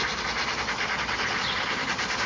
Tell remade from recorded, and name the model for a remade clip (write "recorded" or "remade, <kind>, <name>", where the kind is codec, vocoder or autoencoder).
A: recorded